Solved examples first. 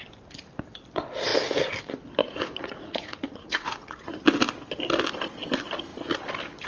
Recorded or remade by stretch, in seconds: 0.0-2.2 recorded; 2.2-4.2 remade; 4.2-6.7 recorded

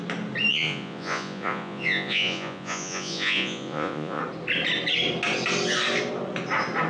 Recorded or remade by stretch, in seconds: 0.0-0.5 recorded; 0.5-4.2 remade; 4.2-6.9 recorded